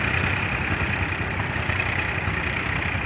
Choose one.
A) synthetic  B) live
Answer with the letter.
B